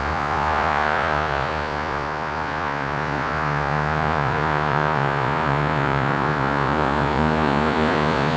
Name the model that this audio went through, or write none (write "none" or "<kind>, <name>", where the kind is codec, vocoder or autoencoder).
vocoder, Vocos